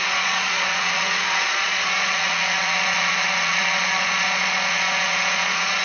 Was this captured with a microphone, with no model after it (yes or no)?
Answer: no